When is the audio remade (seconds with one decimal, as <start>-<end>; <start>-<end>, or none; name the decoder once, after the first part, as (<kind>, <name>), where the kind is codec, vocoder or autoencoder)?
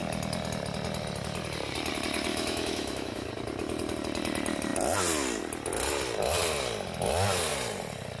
2.3-3.3 (autoencoder, DAC-VAE)